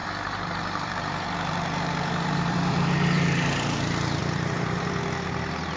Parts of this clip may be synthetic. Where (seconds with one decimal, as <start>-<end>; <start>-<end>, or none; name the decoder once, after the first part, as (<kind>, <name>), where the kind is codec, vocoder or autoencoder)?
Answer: 0.0-3.5 (vocoder, BigVGAN v2); 4.2-4.9

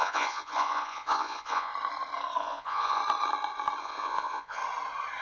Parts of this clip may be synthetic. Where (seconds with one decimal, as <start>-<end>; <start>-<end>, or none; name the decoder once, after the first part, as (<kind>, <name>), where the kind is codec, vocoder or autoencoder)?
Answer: 0.0-1.7 (vocoder, Vocos); 2.4-3.0; 3.8-4.6

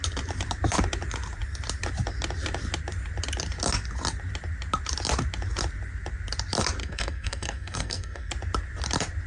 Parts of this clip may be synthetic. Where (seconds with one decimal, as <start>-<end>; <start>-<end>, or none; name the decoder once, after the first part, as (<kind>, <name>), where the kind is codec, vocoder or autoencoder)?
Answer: 6.8-8.3 (codec, SNAC)

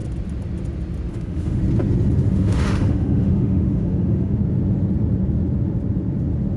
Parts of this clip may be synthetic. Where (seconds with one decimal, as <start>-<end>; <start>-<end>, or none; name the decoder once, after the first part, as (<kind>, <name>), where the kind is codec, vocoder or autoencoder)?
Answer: 1.1-1.6 (autoencoder, DAC-VAE); 2.3-4.4